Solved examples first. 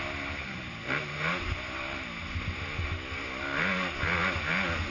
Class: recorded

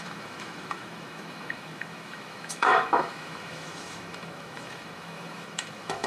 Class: remade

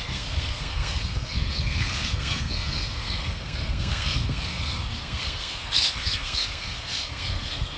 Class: remade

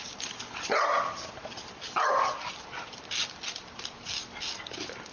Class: recorded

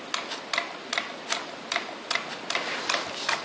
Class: recorded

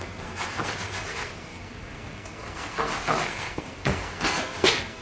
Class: remade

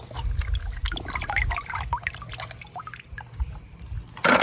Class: recorded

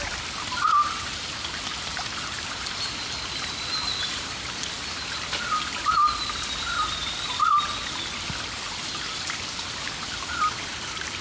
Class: recorded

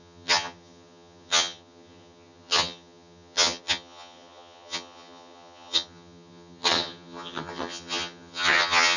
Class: remade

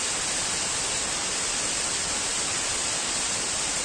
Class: recorded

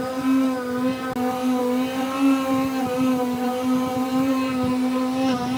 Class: recorded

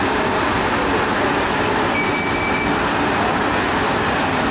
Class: recorded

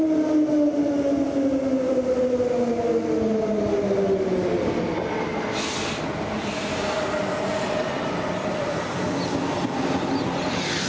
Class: recorded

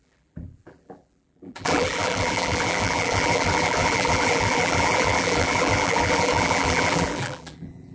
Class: remade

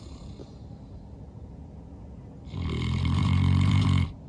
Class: recorded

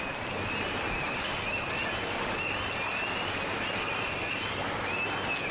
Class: recorded